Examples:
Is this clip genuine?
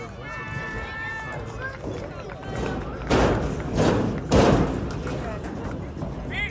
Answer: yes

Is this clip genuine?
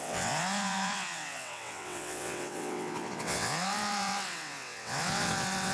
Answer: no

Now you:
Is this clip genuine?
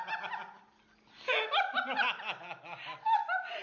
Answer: yes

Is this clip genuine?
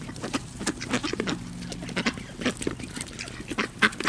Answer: yes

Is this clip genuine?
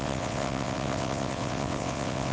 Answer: no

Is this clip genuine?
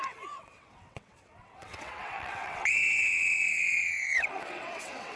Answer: no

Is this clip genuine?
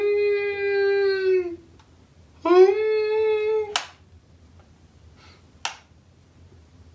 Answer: yes